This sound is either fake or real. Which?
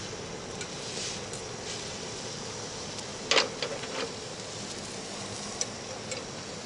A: real